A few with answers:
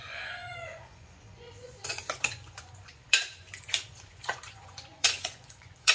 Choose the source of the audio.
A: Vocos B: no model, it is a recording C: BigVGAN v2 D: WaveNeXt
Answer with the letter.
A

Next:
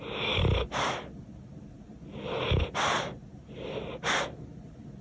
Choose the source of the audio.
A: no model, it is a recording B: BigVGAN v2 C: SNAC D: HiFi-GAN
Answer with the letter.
A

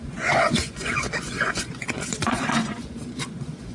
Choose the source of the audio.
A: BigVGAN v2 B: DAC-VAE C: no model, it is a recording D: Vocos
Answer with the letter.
D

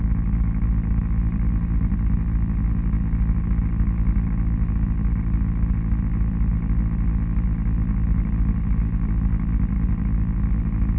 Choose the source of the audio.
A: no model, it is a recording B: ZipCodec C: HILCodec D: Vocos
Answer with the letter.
A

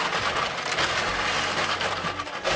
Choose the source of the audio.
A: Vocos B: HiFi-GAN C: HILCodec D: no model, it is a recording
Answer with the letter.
D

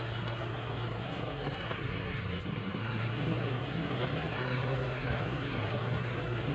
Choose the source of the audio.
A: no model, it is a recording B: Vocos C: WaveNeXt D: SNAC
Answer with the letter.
D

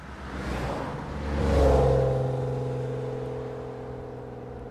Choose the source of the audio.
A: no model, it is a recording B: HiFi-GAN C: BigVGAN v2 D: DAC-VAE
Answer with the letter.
A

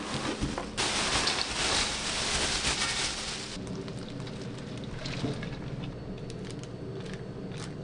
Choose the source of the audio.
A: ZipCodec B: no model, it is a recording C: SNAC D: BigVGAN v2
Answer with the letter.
B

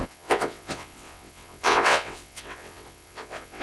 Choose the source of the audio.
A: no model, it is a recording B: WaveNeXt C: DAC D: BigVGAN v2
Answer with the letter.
B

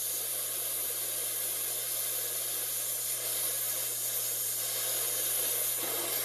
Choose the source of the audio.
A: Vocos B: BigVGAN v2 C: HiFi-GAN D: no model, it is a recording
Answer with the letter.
D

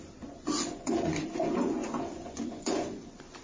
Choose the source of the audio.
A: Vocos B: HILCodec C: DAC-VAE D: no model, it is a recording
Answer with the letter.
A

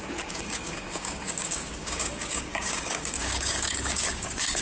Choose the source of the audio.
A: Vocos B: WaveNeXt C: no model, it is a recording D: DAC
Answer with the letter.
D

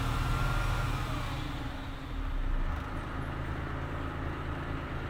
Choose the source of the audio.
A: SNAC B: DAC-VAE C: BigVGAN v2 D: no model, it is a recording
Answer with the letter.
D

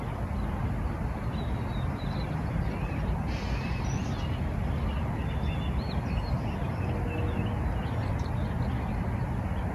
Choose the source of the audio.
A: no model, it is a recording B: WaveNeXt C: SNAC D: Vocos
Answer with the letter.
A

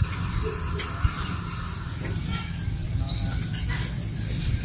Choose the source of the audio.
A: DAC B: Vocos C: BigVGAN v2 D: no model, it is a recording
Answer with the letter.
D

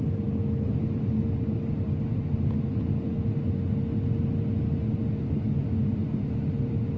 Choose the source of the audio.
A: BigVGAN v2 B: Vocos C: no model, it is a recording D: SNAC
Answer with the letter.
C